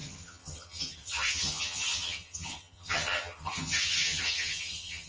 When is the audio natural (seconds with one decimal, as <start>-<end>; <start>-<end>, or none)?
none

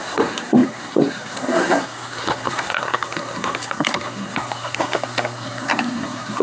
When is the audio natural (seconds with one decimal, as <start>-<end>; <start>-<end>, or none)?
none

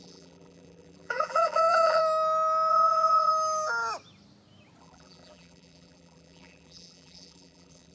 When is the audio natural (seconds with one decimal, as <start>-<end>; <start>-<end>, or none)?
2.0-2.7; 3.3-4.8

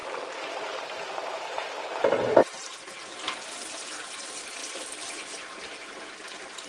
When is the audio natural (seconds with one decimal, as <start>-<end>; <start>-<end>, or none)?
0.0-0.8; 4.6-5.1